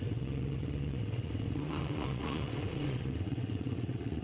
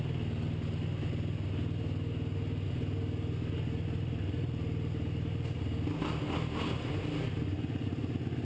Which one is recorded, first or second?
second